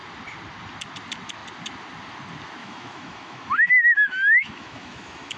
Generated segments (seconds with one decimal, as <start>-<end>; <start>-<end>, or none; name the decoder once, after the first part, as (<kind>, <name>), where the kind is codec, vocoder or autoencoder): 2.6-5.4 (autoencoder, DAC-VAE)